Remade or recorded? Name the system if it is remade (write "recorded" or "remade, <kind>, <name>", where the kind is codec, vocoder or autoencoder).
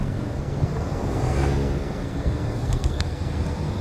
remade, codec, SNAC